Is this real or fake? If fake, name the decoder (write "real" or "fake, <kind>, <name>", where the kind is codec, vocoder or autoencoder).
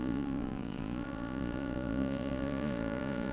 fake, vocoder, Vocos